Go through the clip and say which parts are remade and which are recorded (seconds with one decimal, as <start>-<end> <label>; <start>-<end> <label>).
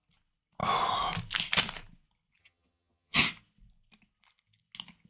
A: 0.0-2.4 recorded; 2.4-3.2 remade; 3.2-5.1 recorded